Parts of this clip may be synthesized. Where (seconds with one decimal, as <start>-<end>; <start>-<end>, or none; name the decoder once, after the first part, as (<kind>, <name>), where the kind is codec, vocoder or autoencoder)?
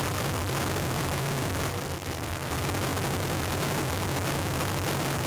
1.7-2.5 (codec, SNAC)